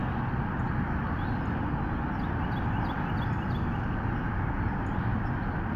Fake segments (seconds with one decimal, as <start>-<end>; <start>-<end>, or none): none